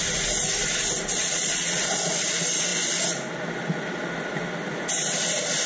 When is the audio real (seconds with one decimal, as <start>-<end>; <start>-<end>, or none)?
0.0-1.2; 1.8-5.7